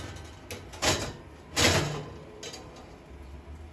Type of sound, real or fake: real